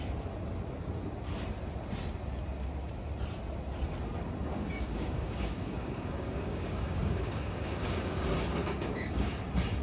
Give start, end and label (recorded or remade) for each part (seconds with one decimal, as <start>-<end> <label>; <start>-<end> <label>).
0.0-4.5 recorded; 4.5-8.2 remade; 8.2-8.6 recorded; 8.6-9.4 remade; 9.4-9.8 recorded